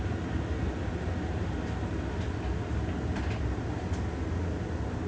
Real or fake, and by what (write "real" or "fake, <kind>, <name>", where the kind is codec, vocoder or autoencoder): real